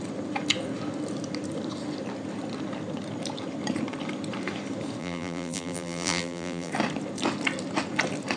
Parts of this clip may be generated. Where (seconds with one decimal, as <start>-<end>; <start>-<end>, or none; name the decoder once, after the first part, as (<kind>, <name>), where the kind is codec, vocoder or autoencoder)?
5.0-6.7 (vocoder, BigVGAN v2)